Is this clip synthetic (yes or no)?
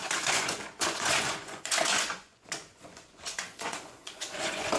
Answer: yes